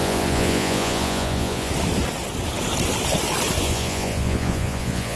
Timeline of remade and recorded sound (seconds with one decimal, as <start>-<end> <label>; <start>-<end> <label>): 0.0-1.7 remade; 1.7-3.6 recorded; 3.6-5.2 remade